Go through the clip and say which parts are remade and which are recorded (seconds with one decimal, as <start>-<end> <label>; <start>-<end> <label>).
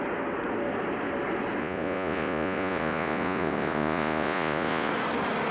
0.0-1.6 recorded; 1.6-4.9 remade; 4.9-5.5 recorded